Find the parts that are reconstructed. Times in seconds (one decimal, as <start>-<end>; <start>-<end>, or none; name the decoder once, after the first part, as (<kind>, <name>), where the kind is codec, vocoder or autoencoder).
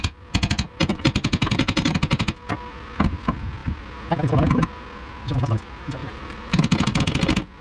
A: 0.9-2.3 (vocoder, BigVGAN v2); 6.0-7.0